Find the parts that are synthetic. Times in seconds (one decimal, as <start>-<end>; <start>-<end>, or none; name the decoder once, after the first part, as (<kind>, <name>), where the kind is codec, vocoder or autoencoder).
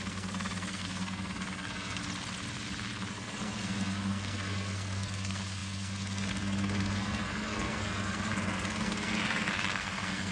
0.0-2.0 (codec, SNAC); 3.1-10.3